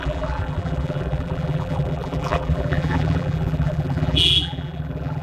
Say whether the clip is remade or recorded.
remade